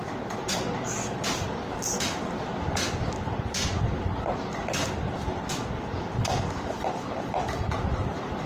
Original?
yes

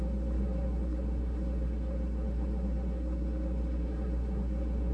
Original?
no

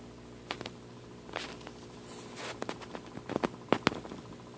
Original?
yes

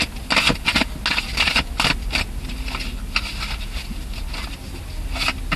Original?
yes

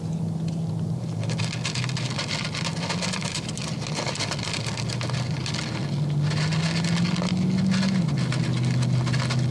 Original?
yes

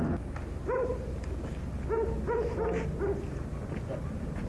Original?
yes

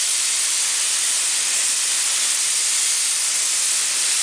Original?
yes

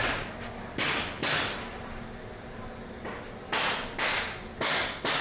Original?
yes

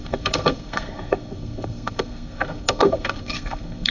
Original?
no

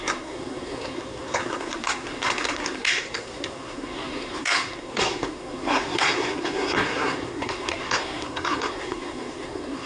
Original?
no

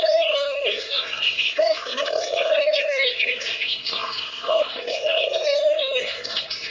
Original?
no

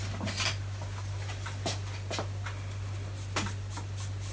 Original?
yes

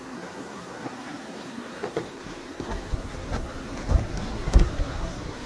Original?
no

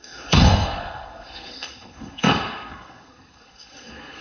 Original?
no